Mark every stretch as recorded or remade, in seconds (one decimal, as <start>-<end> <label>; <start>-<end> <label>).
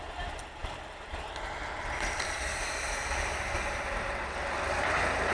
0.0-5.3 recorded